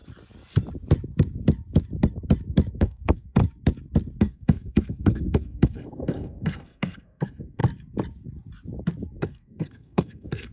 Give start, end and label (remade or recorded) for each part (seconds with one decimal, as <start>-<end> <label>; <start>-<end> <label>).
0.0-2.7 recorded; 2.7-3.4 remade; 3.4-4.2 recorded; 4.2-7.6 remade; 7.6-9.2 recorded; 9.2-10.5 remade